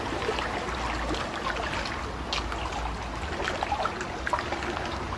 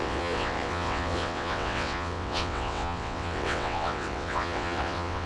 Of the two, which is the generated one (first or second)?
second